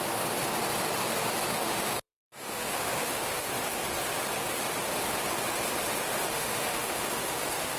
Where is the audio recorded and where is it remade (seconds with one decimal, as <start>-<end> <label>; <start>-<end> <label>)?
0.0-1.5 recorded; 1.5-3.5 remade; 3.5-6.3 recorded; 6.3-7.8 remade

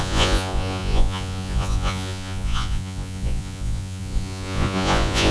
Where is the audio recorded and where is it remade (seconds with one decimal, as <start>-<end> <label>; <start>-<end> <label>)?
0.0-5.3 remade